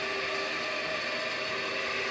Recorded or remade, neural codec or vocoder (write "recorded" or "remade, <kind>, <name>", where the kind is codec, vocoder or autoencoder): recorded